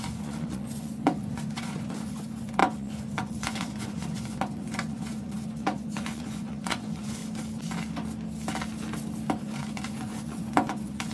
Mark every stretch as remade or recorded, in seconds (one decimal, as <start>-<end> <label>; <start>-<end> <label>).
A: 0.0-7.2 remade; 7.2-9.4 recorded; 9.4-11.1 remade